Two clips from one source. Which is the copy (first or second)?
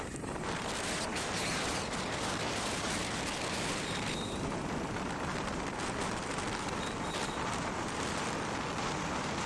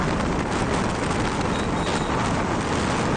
first